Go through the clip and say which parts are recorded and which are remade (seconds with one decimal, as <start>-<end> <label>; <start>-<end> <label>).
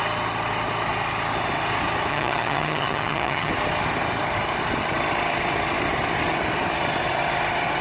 0.0-2.1 recorded; 2.1-3.5 remade; 3.5-7.8 recorded